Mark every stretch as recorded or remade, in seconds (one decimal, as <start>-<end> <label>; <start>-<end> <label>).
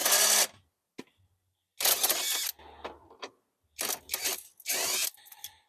0.0-5.7 recorded